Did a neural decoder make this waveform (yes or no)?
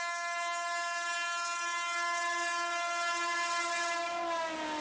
no